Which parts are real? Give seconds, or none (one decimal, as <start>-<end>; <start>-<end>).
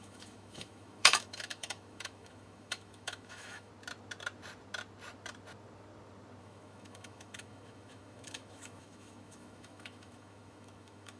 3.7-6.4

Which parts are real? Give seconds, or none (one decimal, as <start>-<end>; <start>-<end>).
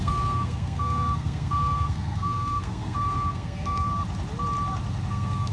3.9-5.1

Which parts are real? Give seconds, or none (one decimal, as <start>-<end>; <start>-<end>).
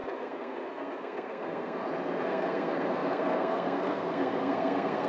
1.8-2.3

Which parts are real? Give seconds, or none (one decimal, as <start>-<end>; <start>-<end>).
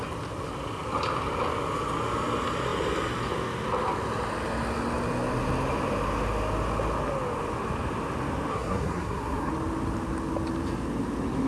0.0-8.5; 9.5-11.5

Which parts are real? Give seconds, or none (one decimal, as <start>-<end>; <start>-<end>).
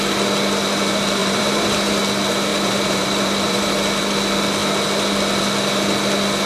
0.0-1.2; 1.9-2.5; 3.7-6.5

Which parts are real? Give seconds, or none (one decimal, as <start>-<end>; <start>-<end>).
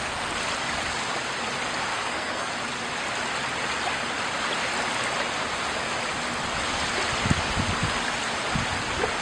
0.0-1.9; 2.5-9.2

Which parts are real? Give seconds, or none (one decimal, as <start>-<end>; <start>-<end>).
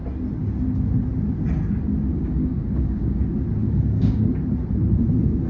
0.0-2.1; 3.2-3.6; 4.2-5.5